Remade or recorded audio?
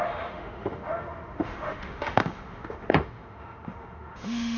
remade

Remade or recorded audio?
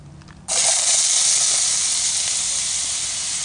recorded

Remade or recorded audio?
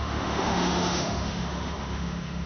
remade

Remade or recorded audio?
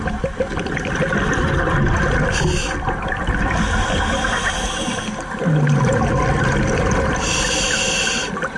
recorded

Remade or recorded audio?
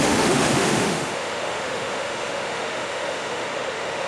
remade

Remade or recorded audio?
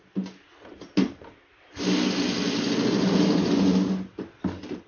recorded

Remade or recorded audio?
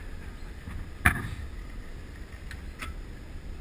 recorded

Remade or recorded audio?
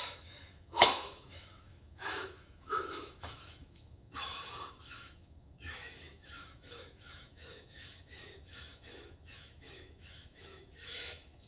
remade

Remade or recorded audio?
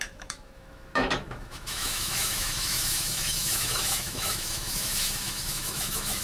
remade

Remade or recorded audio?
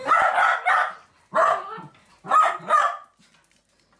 recorded